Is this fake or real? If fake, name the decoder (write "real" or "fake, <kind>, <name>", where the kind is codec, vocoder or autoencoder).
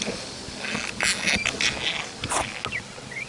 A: real